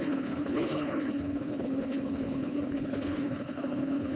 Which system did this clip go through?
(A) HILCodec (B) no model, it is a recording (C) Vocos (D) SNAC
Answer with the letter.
A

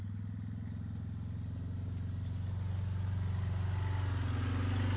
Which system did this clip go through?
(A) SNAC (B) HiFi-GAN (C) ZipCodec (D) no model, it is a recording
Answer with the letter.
D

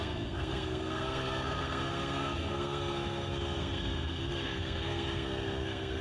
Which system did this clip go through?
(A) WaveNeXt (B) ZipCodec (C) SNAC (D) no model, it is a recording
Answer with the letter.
C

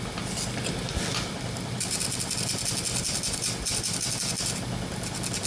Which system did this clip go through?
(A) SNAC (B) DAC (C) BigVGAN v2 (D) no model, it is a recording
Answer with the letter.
D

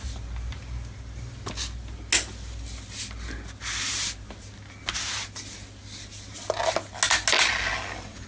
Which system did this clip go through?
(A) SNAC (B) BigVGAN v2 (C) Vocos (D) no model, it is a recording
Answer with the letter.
D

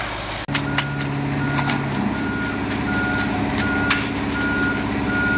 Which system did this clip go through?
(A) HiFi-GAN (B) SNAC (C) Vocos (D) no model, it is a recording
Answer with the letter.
D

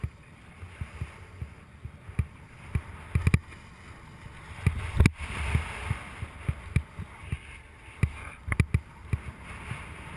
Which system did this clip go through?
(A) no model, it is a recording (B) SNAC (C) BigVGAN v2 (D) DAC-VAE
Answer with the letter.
A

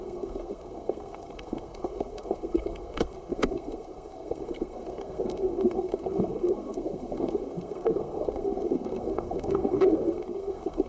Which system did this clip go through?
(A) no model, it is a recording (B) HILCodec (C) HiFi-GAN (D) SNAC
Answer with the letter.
D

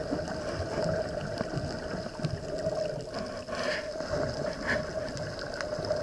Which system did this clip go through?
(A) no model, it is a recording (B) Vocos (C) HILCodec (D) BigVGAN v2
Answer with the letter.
A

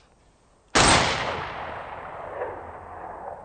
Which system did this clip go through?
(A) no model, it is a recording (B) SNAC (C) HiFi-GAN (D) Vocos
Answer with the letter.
A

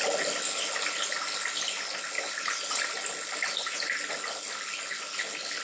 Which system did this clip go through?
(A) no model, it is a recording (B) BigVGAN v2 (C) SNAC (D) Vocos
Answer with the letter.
A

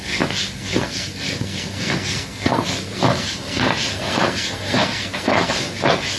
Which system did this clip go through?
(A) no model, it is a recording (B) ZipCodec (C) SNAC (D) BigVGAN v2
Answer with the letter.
C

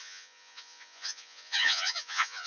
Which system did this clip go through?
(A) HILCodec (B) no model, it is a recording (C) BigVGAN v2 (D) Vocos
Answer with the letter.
D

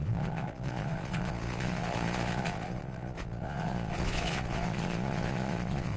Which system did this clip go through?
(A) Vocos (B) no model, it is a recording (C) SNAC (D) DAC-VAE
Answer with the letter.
A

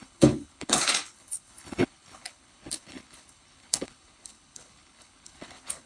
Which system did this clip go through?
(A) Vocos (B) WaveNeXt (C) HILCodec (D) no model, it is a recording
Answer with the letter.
C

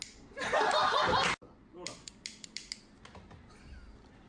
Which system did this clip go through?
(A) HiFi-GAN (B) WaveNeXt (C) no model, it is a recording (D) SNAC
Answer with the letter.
C